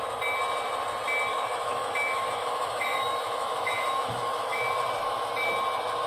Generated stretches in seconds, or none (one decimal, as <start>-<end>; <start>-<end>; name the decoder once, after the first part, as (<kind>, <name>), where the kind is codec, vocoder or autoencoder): 1.3-4.7 (autoencoder, DAC-VAE)